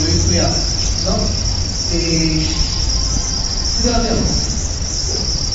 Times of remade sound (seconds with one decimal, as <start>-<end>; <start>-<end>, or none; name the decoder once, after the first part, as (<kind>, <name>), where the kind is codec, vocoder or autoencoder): 3.9-4.4 (vocoder, Vocos)